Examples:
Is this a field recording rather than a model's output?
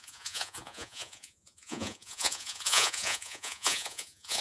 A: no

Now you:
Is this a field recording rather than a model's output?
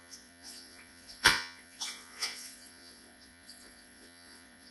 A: no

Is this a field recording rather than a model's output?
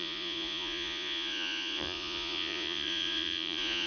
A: no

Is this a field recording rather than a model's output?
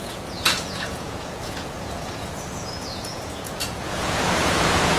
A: no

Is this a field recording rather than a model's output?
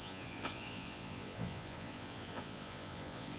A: no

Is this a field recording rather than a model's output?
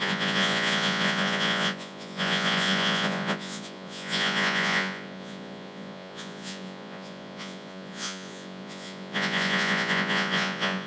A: no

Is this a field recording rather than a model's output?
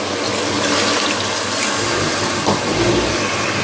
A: yes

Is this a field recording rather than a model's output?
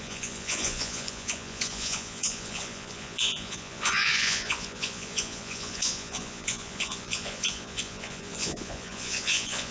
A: no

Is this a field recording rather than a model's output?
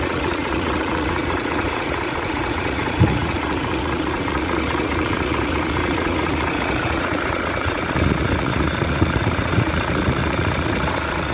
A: no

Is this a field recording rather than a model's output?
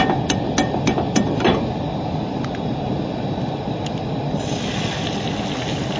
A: yes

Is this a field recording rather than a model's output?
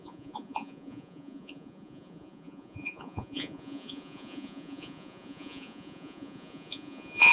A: no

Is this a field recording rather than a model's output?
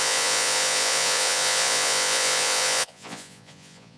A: no